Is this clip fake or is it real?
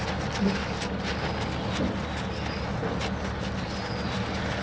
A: real